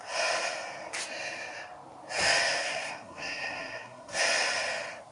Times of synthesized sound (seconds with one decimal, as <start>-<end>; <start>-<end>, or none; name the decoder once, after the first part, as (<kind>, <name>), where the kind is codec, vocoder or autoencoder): 2.6-4.2 (codec, SNAC)

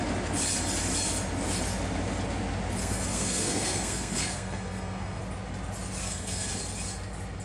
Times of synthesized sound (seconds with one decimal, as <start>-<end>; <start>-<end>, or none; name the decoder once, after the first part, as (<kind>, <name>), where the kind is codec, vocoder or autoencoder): 2.8-5.2 (codec, SNAC); 6.0-6.5

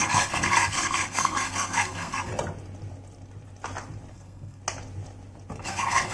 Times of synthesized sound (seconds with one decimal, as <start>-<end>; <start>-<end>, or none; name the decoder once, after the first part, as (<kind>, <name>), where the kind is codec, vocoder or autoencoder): 0.0-2.3 (codec, SNAC); 4.1-4.6; 5.6-6.1

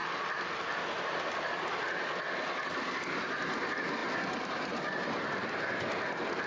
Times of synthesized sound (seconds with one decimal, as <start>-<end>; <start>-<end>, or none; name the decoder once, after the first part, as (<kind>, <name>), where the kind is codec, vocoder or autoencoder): none